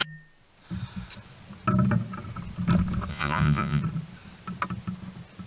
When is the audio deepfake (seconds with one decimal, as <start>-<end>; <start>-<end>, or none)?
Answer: 3.1-3.8